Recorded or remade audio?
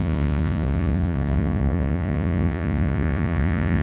remade